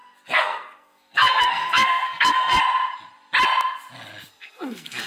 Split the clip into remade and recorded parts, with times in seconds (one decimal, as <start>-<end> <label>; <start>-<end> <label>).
0.0-2.6 remade; 2.6-4.3 recorded; 4.3-5.1 remade